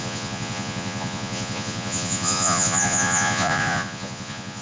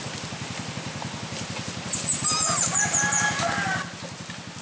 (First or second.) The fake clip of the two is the first